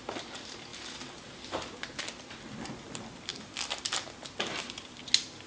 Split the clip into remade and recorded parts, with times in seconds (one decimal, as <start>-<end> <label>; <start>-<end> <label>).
0.0-5.5 recorded